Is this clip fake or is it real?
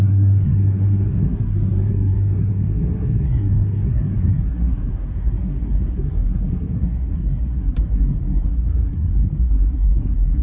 fake